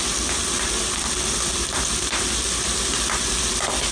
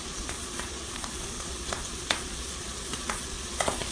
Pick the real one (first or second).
first